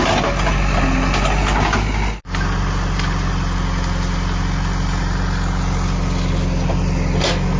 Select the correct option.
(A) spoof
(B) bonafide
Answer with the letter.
B